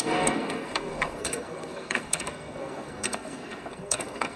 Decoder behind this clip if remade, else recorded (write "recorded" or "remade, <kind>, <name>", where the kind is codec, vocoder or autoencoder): remade, codec, SNAC